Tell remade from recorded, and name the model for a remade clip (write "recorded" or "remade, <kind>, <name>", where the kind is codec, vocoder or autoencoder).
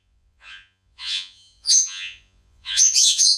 remade, vocoder, Vocos